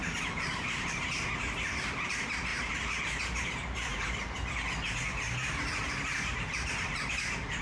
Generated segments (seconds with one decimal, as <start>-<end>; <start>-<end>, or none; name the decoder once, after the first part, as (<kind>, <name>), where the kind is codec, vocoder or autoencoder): 0.5-1.1 (vocoder, BigVGAN v2); 2.5-3.0; 3.9-4.5